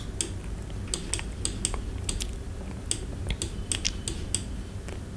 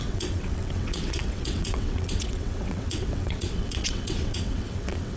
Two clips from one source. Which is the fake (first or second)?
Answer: second